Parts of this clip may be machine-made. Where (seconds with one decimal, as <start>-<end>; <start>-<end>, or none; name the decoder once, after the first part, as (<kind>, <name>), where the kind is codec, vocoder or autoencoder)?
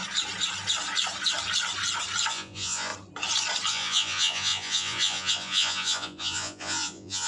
2.3-2.9 (vocoder, Vocos); 3.7-7.3